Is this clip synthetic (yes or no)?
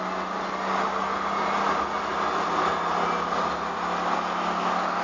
no